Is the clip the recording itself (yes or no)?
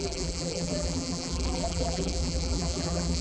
no